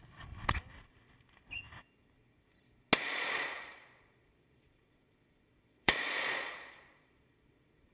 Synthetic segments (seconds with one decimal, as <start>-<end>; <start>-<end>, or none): 3.0-7.9